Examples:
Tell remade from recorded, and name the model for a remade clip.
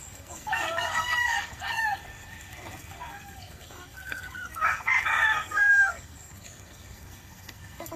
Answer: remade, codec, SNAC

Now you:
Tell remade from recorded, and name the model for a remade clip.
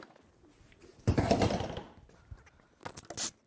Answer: recorded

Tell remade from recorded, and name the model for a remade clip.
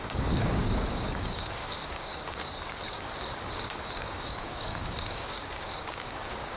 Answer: remade, codec, DAC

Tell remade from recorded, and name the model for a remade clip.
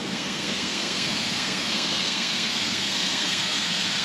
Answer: remade, codec, SNAC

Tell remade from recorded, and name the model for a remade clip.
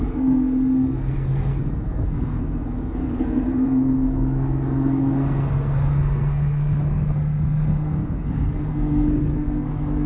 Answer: remade, codec, SNAC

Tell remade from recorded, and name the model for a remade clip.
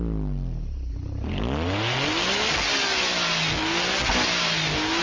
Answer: recorded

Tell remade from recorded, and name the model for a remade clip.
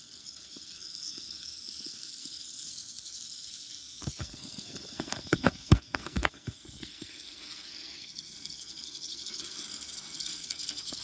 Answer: remade, codec, SNAC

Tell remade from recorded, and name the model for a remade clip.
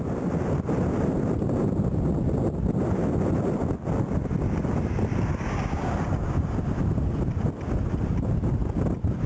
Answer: recorded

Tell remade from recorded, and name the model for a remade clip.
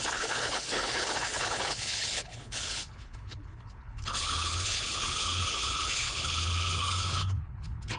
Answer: remade, codec, HILCodec